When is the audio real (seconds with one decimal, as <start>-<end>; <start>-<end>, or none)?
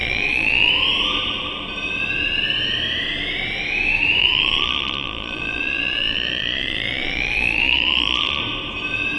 0.7-4.2; 8.4-9.2